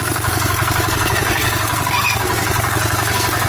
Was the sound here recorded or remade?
remade